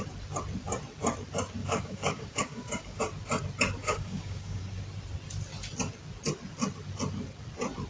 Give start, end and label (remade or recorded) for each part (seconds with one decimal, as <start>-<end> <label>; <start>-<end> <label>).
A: 0.0-1.6 recorded; 1.6-3.0 remade; 3.0-3.8 recorded; 3.8-4.6 remade; 4.6-7.9 recorded